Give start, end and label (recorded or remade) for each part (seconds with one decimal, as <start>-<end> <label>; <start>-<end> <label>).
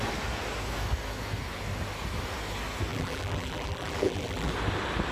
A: 0.0-2.9 recorded; 2.9-4.5 remade; 4.5-5.1 recorded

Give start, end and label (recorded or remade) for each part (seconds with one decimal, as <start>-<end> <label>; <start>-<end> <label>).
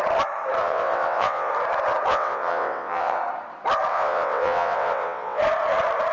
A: 0.0-0.6 recorded; 0.6-1.5 remade; 1.5-2.1 recorded; 2.1-3.2 remade; 3.2-3.9 recorded; 3.9-5.4 remade; 5.4-6.1 recorded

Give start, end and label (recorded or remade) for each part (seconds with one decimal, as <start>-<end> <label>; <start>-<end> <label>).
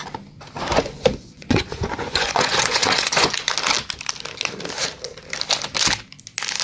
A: 0.0-0.7 recorded; 0.7-3.5 remade; 3.5-6.6 recorded